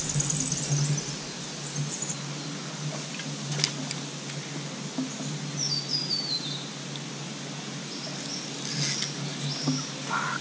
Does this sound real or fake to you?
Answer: real